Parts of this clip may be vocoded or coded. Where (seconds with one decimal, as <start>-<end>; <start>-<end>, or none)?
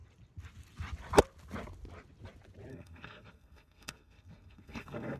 2.7-5.2